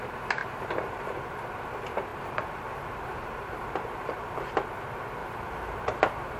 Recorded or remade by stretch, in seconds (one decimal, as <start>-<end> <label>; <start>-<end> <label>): 0.0-0.4 recorded; 0.4-1.4 remade; 1.4-2.1 recorded; 2.1-4.4 remade; 4.4-5.2 recorded; 5.2-6.4 remade